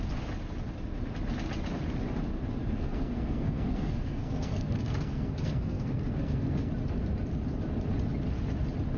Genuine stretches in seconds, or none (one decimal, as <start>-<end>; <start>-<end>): 0.0-2.6; 6.7-9.0